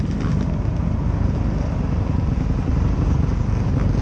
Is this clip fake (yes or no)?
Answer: no